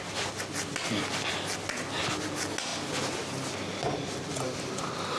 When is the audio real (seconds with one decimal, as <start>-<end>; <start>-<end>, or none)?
0.0-5.2